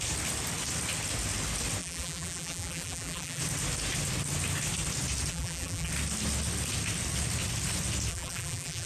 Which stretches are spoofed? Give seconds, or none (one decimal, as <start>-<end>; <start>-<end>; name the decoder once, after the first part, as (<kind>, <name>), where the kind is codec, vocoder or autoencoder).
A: 1.8-3.4 (vocoder, BigVGAN v2); 5.3-5.9; 8.1-8.9